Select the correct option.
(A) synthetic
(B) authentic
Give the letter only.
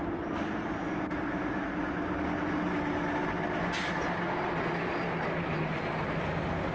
B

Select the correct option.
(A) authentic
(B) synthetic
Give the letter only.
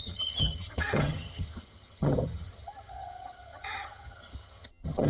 B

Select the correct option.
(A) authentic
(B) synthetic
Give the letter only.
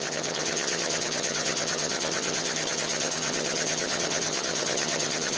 B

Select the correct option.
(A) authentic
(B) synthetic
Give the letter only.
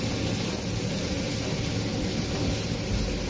A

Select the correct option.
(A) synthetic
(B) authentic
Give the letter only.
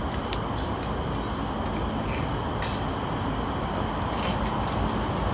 B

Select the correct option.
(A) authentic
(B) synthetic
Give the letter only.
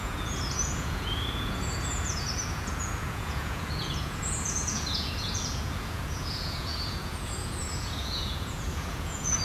B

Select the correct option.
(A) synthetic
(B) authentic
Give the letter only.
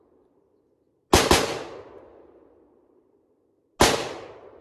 B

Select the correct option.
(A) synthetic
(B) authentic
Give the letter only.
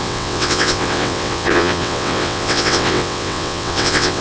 A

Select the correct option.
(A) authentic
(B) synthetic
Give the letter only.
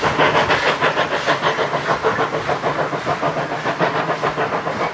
A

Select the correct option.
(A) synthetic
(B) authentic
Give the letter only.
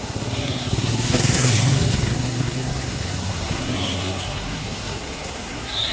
A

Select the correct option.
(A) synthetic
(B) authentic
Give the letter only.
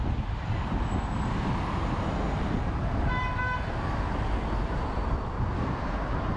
B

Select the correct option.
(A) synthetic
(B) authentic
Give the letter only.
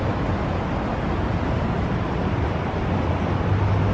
B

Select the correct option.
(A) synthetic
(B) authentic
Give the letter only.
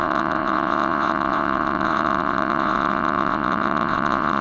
A